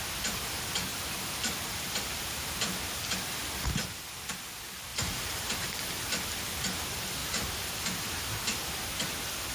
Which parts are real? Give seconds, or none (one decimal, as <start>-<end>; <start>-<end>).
0.0-0.9; 2.8-4.9; 5.9-7.2; 8.3-9.5